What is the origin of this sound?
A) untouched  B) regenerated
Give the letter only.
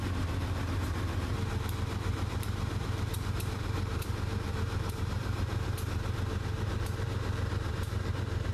B